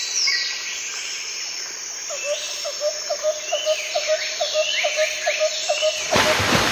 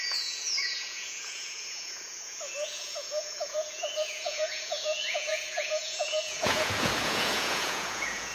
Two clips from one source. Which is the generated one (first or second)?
second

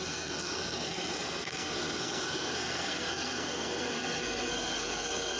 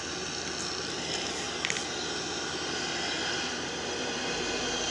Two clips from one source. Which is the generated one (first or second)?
first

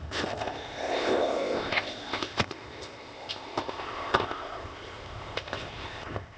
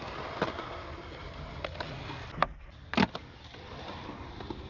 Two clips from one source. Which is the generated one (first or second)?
first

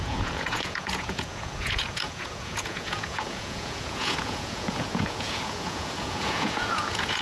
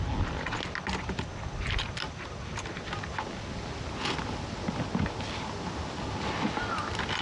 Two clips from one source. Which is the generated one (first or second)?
first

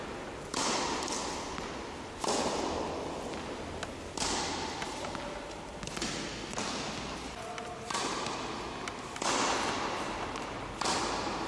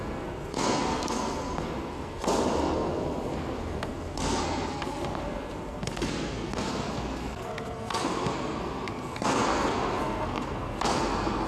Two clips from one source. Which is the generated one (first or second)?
second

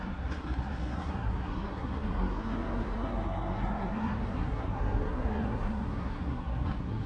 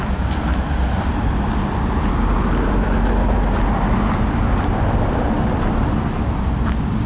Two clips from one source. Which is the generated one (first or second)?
first